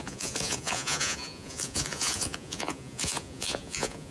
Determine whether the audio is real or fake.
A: fake